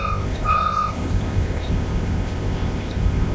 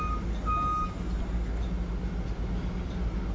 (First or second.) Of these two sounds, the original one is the second